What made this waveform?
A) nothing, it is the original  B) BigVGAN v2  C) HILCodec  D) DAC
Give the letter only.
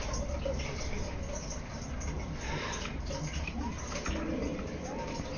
A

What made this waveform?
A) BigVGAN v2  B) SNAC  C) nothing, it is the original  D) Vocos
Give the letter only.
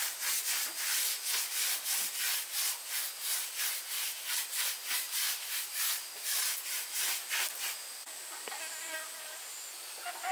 C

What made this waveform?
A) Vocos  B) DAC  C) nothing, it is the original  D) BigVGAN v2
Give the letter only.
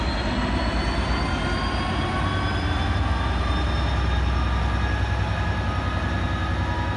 C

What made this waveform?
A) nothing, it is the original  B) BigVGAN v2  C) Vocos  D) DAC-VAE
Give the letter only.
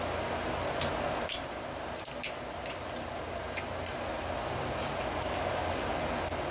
A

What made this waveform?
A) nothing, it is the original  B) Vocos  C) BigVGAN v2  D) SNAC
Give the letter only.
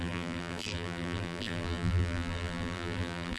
C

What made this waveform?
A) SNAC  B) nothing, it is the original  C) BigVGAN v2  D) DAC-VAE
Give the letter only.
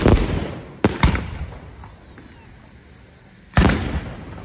C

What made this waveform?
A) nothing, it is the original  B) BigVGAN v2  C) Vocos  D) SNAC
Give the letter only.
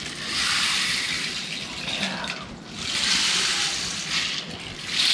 A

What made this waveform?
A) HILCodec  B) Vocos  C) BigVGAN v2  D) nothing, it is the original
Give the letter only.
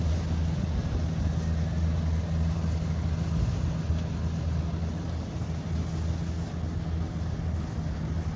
D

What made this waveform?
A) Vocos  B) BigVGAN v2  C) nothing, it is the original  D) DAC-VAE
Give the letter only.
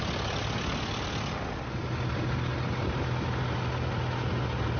C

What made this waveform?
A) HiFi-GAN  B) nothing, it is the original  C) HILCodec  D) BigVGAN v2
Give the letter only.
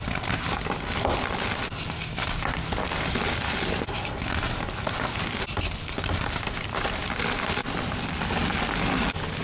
B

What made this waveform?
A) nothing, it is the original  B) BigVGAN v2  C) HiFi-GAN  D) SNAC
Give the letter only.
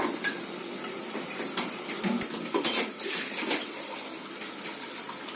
B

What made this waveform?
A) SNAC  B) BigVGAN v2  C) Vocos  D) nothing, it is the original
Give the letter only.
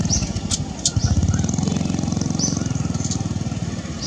D